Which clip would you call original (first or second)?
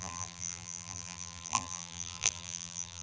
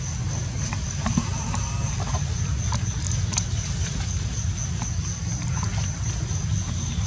second